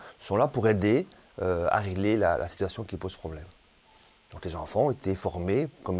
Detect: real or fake fake